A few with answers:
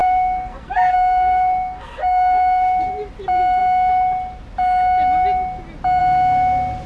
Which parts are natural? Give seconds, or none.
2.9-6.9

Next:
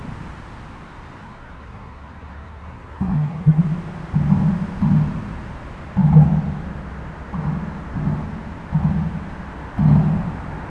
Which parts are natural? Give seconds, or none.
0.0-1.2; 3.6-10.7

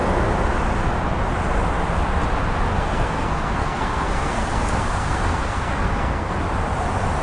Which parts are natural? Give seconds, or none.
0.0-2.7; 6.3-7.2